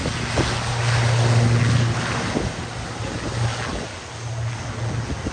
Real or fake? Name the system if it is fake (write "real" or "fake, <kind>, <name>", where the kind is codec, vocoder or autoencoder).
real